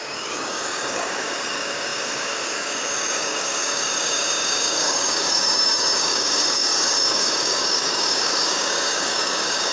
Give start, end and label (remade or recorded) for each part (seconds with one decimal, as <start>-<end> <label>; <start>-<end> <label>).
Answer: 0.0-9.7 remade